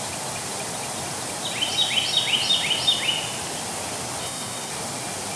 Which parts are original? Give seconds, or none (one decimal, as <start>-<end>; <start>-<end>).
0.0-4.2; 4.7-5.4